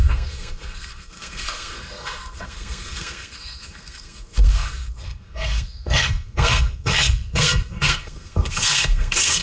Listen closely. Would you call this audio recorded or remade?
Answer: remade